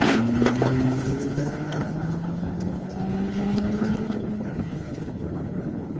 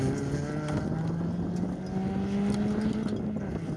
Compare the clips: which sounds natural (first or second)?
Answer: second